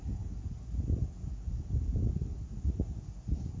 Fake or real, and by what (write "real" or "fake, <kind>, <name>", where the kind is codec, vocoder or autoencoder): real